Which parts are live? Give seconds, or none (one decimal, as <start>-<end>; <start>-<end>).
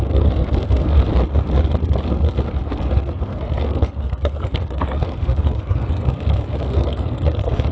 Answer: 1.1-2.0